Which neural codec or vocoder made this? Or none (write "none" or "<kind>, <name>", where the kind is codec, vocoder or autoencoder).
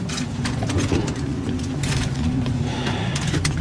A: vocoder, Vocos